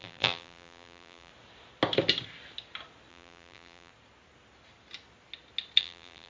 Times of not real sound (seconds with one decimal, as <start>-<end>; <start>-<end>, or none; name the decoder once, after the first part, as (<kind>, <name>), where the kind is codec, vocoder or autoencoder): 0.0-1.3 (vocoder, BigVGAN v2); 3.1-3.9; 5.8-6.3